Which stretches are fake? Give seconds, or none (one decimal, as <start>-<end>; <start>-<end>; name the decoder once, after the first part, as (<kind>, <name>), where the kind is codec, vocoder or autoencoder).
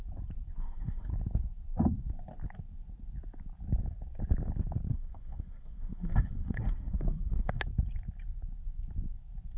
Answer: 0.6-1.1 (codec, SNAC); 4.9-7.6